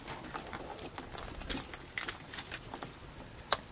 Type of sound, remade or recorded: recorded